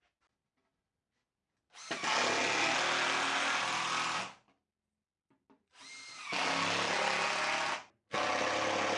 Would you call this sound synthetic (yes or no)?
no